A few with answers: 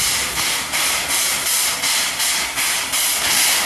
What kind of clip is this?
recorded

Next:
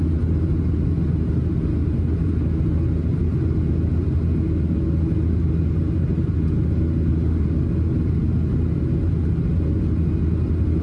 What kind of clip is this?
recorded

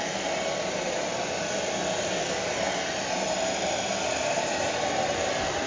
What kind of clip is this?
recorded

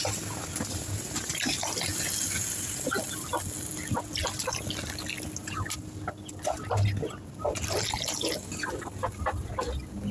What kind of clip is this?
recorded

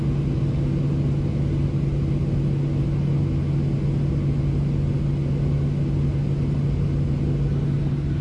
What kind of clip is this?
recorded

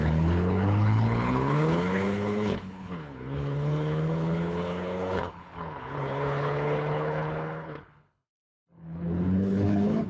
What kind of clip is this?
remade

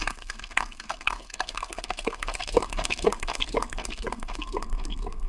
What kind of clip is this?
remade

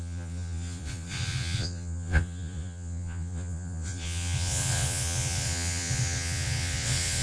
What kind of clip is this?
remade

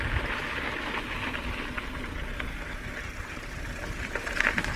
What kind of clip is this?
recorded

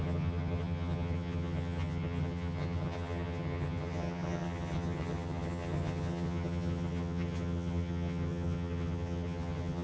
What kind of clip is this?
remade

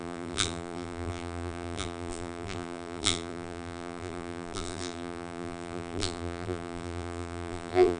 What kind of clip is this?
remade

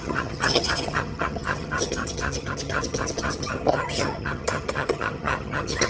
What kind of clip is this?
remade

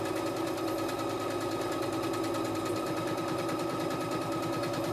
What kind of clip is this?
recorded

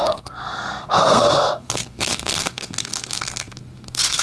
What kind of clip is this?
remade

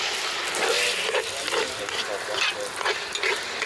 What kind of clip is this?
recorded